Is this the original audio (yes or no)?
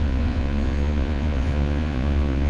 no